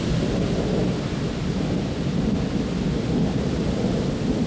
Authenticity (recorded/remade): recorded